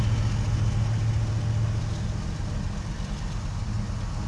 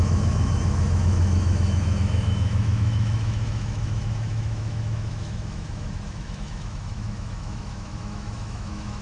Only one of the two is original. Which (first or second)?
first